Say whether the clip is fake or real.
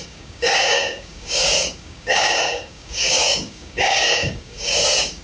fake